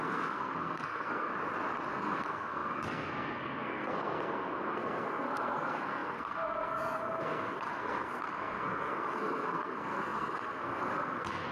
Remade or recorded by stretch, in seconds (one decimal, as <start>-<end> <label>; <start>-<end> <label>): 0.0-1.3 remade; 1.3-1.9 recorded; 1.9-11.5 remade